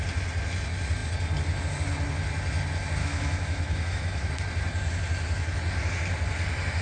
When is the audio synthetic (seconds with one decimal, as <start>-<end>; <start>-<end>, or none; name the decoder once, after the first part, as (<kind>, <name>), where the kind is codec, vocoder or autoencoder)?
3.0-4.3 (autoencoder, DAC-VAE)